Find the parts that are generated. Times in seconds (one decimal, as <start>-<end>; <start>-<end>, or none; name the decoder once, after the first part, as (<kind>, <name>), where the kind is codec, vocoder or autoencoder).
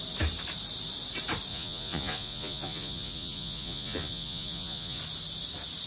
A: 1.5-5.0 (vocoder, Vocos)